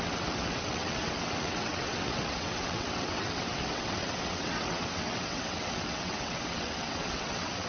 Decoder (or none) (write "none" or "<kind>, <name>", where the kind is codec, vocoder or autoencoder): vocoder, WaveNeXt